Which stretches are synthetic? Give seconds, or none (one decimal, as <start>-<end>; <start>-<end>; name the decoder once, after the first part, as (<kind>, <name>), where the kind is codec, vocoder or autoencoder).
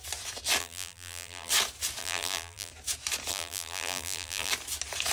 0.6-1.5 (vocoder, BigVGAN v2); 2.0-2.7; 3.3-4.5